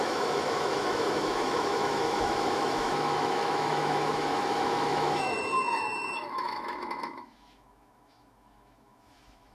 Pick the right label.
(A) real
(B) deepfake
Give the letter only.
B